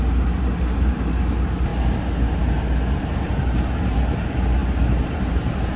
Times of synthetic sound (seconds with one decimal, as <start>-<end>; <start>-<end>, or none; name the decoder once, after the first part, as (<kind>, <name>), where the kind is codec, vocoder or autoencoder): none